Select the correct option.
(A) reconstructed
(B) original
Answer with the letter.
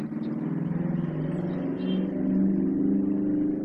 B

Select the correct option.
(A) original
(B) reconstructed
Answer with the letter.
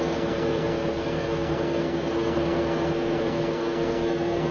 B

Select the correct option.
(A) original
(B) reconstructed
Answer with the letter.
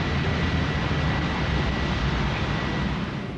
A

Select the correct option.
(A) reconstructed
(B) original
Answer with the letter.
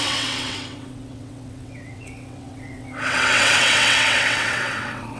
A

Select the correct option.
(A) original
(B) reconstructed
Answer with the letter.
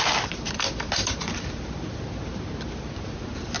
A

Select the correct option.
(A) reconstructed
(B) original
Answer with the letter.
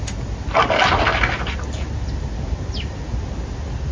B